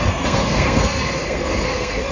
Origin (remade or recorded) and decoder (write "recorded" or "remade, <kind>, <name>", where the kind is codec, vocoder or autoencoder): remade, codec, SNAC